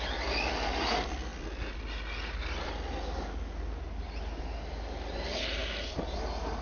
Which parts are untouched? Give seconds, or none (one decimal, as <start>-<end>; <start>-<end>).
0.0-6.6